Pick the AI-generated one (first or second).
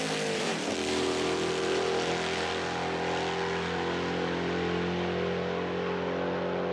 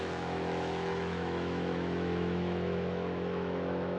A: second